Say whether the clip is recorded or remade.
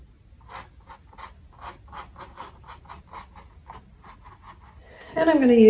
recorded